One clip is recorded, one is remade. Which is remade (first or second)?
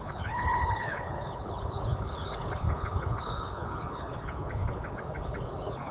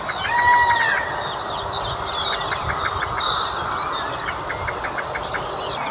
first